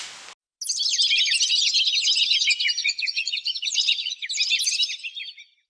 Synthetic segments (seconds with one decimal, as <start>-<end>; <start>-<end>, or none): 2.8-4.3